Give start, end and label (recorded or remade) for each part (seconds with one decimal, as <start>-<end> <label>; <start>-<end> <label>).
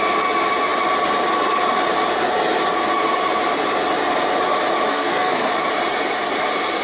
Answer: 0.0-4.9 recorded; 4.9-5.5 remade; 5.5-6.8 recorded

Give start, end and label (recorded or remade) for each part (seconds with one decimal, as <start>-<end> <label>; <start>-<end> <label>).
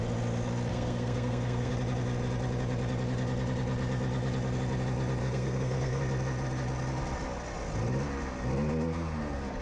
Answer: 0.0-0.7 recorded; 0.7-1.7 remade; 1.7-5.2 recorded; 5.2-6.0 remade; 6.0-9.6 recorded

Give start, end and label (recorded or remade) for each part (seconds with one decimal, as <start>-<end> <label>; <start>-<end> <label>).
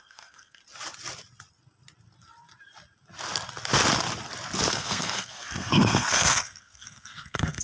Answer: 0.0-0.6 remade; 0.6-4.7 recorded; 4.7-7.6 remade